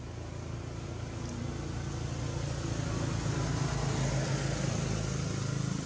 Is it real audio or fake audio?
real